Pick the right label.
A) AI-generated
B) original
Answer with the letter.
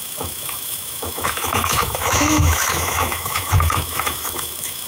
A